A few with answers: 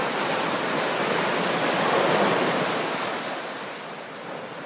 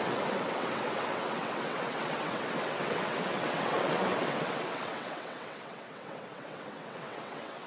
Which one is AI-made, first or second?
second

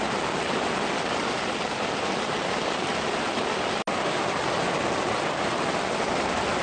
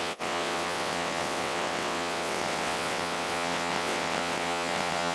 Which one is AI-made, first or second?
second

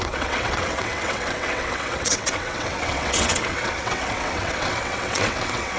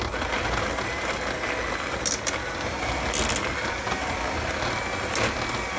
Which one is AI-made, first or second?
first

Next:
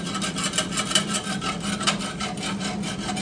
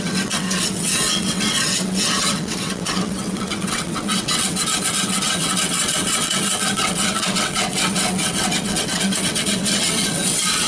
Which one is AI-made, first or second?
second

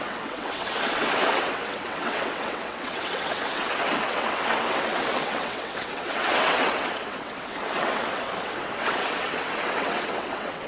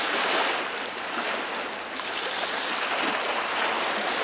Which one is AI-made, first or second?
first